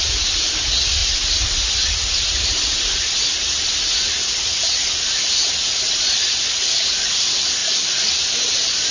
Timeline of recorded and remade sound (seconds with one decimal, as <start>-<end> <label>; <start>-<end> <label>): 0.0-8.9 recorded